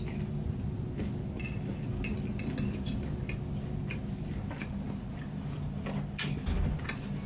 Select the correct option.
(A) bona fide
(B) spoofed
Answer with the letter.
A